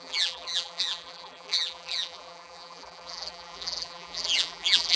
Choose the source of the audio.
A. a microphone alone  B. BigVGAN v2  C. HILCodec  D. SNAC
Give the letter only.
B